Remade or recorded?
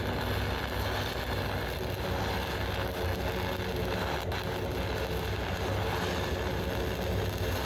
recorded